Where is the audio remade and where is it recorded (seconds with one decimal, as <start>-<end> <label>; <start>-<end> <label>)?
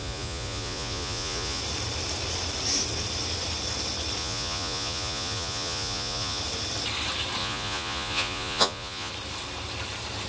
0.0-1.6 remade; 1.6-4.2 recorded; 4.2-6.4 remade; 6.4-7.4 recorded; 7.4-9.1 remade; 9.1-10.3 recorded